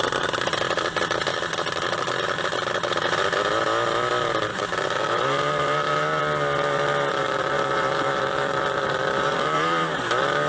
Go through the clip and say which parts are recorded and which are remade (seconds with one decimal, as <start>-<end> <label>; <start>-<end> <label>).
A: 0.0-1.3 recorded; 1.3-2.9 remade; 2.9-4.5 recorded; 4.5-6.2 remade; 6.2-7.1 recorded; 7.1-10.0 remade; 10.0-10.5 recorded